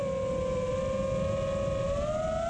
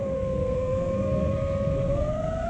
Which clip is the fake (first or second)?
second